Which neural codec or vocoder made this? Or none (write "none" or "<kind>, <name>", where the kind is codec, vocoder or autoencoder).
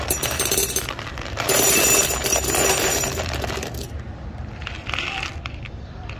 vocoder, BigVGAN v2